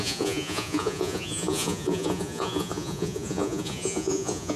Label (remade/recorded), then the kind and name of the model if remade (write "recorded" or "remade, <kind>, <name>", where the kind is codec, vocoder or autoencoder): remade, vocoder, Vocos